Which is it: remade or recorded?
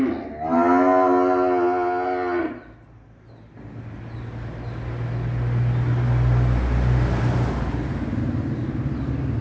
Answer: recorded